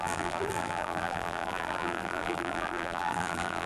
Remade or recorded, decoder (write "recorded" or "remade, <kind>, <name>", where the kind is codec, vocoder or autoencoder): remade, vocoder, BigVGAN v2